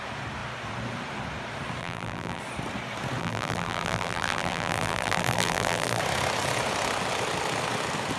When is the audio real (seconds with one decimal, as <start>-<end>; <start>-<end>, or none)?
0.0-1.8; 2.4-3.2; 6.0-8.2